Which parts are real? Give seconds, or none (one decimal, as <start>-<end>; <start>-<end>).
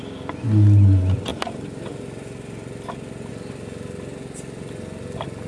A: 0.0-5.5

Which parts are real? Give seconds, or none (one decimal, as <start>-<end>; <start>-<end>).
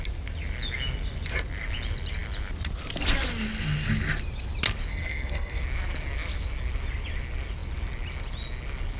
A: 0.0-4.9; 5.6-9.0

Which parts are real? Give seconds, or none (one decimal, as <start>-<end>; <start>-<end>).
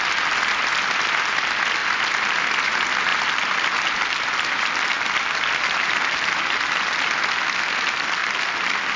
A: 0.0-1.8; 2.4-8.2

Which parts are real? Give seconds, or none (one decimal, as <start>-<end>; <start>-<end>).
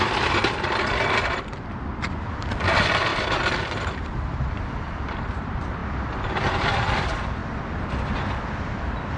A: 5.8-6.5; 7.4-9.2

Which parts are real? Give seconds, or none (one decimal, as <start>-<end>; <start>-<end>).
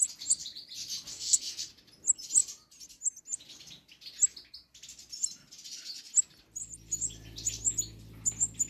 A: 0.0-1.1; 1.7-8.7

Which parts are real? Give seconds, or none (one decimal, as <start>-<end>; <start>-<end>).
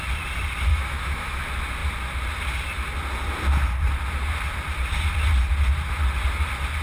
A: 0.0-0.7; 1.4-6.8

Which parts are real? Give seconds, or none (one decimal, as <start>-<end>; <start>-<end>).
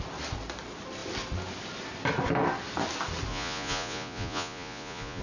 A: 0.0-3.3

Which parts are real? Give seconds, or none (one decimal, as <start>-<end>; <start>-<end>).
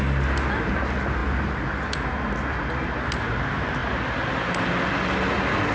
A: 0.0-5.7